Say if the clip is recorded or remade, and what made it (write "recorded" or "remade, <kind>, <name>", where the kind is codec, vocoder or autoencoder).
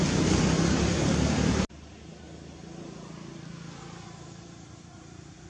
recorded